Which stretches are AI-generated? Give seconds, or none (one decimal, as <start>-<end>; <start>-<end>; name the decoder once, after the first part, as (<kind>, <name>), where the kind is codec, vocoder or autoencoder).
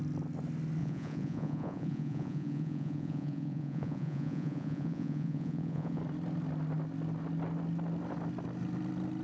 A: 0.8-6.0 (vocoder, Vocos)